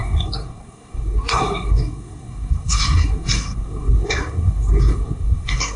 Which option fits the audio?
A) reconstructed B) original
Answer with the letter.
A